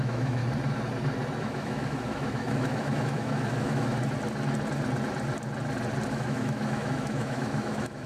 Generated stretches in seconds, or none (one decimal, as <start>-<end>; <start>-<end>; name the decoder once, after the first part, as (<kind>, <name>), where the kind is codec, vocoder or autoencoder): 0.0-0.4 (autoencoder, DAC-VAE); 1.4-3.9; 6.1-8.1